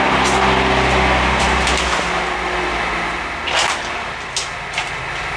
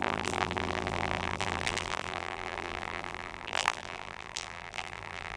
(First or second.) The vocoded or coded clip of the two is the second